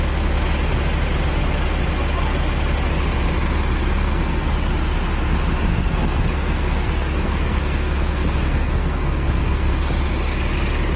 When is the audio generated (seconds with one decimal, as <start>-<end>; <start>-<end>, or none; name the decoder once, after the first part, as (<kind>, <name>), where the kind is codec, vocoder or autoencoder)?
3.8-4.5 (codec, SNAC); 5.7-9.9